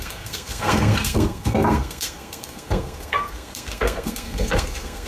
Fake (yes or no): yes